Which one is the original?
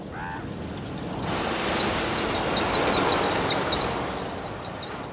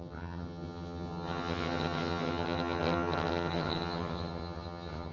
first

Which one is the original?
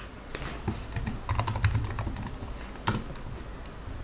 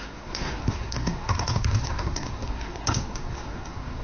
first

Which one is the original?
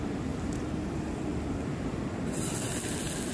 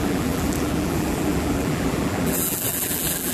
first